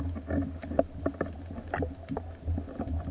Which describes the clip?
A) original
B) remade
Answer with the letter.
A